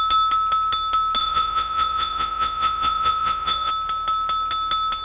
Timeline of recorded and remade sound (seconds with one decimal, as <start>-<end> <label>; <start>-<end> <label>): 0.0-1.2 recorded; 1.2-3.7 remade; 3.7-5.0 recorded